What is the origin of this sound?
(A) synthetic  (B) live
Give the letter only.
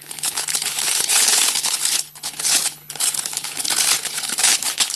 A